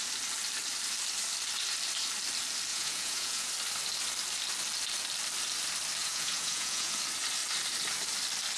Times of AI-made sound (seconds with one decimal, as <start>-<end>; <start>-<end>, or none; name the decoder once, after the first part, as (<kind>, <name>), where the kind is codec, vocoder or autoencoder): 2.7-3.5 (vocoder, Vocos); 6.0-7.0

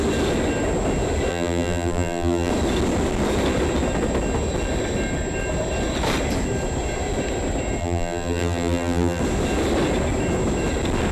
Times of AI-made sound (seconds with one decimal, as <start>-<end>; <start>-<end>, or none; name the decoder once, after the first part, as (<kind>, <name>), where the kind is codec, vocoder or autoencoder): 1.3-2.5 (vocoder, BigVGAN v2); 7.8-9.2

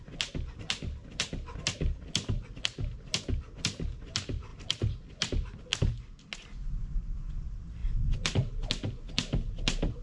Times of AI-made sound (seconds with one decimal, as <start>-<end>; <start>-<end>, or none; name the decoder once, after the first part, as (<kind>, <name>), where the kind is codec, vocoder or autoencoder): 1.0-1.6 (vocoder, BigVGAN v2); 4.5-5.6; 7.8-8.7

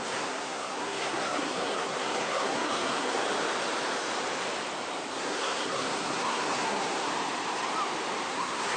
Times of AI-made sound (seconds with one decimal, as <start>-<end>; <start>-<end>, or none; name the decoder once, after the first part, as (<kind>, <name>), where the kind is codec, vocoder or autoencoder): 0.0-3.2 (codec, SNAC); 5.1-7.1; 8.3-8.8

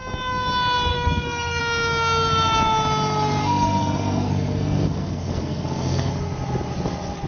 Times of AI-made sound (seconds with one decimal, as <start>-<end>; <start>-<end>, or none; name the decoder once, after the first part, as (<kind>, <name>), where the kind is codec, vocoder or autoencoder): 0.9-1.6 (codec, SNAC); 3.4-6.1